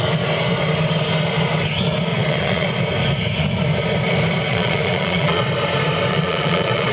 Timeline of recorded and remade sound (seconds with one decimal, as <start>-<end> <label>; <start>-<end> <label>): 0.0-2.1 recorded; 2.1-2.7 remade; 2.7-4.5 recorded; 4.5-5.5 remade; 5.5-6.1 recorded; 6.1-6.9 remade